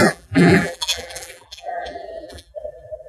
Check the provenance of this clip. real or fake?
fake